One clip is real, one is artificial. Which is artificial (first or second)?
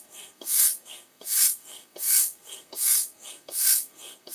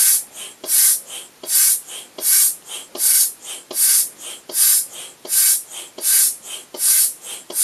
first